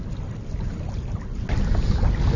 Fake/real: real